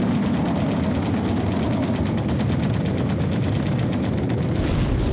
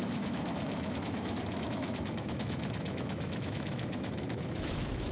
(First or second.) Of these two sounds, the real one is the first